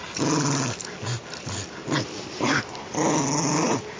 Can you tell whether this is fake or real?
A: real